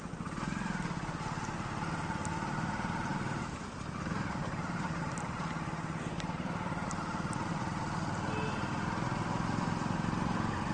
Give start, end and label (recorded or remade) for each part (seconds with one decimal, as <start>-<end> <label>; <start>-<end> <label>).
0.0-3.1 recorded; 3.1-7.7 remade; 7.7-10.7 recorded